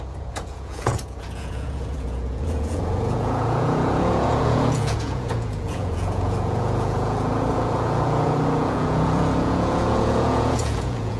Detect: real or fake fake